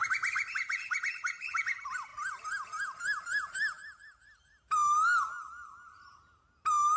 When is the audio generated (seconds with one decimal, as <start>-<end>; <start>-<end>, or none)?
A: none